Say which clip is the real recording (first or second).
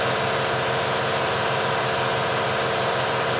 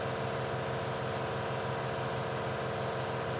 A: second